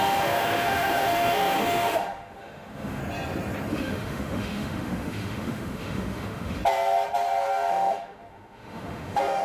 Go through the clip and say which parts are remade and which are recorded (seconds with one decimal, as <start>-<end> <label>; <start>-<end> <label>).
0.0-3.0 remade; 3.0-3.7 recorded; 3.7-6.6 remade; 6.6-7.7 recorded; 7.7-9.4 remade